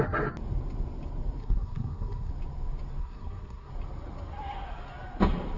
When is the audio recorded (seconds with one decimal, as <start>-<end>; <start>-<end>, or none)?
0.0-1.4; 2.3-3.0; 3.7-5.6